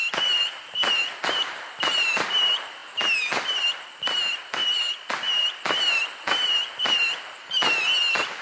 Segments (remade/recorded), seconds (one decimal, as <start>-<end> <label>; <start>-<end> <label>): 0.0-8.4 recorded